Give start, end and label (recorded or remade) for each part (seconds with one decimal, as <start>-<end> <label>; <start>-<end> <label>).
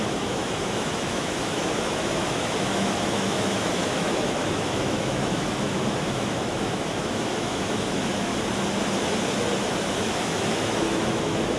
0.0-8.3 remade; 8.3-9.8 recorded; 9.8-11.6 remade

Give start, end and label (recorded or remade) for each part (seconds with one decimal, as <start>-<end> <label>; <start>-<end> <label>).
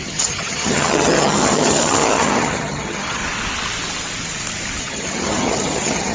0.0-3.2 remade; 3.2-4.8 recorded; 4.8-6.1 remade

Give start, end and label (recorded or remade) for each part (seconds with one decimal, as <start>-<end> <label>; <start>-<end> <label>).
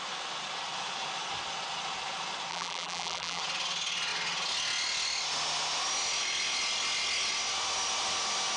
0.0-2.5 recorded; 2.5-3.4 remade; 3.4-8.6 recorded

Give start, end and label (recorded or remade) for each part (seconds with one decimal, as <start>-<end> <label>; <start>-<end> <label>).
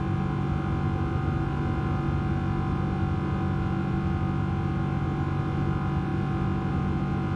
0.0-7.4 recorded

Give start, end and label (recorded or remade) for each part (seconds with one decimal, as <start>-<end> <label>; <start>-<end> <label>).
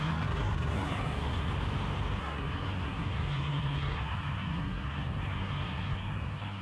0.0-1.5 remade; 1.5-2.2 recorded; 2.2-6.6 remade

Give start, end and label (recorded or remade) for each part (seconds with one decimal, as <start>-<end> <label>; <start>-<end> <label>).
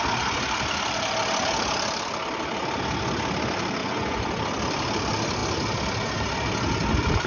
0.0-3.8 recorded; 3.8-4.3 remade; 4.3-7.3 recorded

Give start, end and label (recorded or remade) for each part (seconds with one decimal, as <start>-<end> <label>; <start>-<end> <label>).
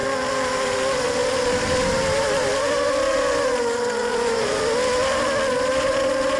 0.0-4.1 recorded; 4.1-4.6 remade; 4.6-6.4 recorded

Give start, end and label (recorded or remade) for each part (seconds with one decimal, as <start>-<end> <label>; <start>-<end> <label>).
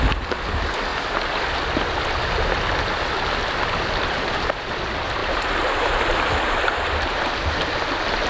0.0-5.2 recorded; 5.2-7.3 remade; 7.3-8.3 recorded